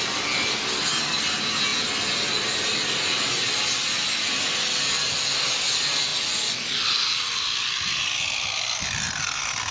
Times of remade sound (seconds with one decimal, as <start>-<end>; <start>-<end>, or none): none